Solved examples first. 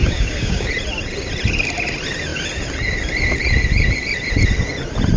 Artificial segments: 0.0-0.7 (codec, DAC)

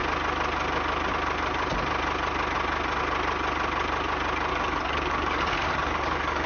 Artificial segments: 4.5-6.5 (codec, DAC)

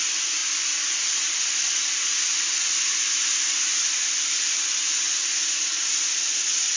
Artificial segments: 0.4-1.3 (vocoder, BigVGAN v2)

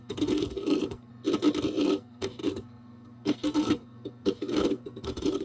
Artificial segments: 0.0-1.1 (codec, SNAC); 1.8-5.4